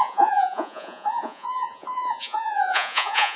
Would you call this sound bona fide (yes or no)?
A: no